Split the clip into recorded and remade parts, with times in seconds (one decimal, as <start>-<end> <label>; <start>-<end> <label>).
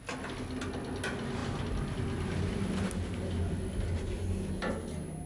0.0-5.3 recorded